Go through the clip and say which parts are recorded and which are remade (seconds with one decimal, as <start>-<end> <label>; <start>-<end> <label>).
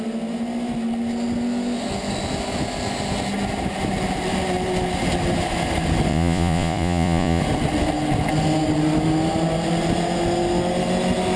0.0-6.1 recorded; 6.1-7.4 remade; 7.4-11.4 recorded